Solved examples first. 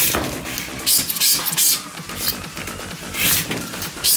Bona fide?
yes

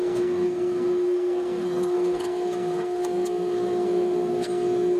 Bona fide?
no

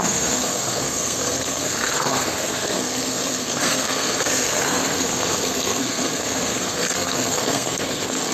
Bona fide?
no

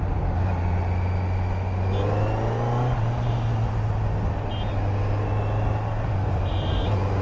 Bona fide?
yes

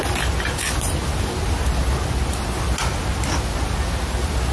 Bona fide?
yes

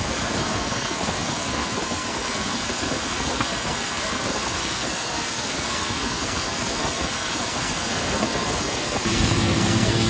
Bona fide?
no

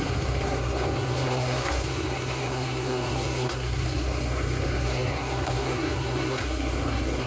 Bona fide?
no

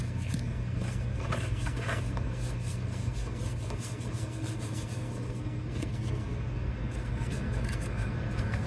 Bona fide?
no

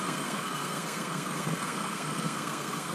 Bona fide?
no